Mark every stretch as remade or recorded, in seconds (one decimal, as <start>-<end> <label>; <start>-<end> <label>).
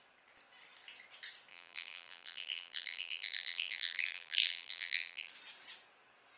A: 0.0-1.5 recorded; 1.5-5.3 remade; 5.3-6.4 recorded